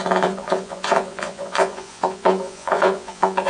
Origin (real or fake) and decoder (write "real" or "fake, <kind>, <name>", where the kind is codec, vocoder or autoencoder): fake, vocoder, Vocos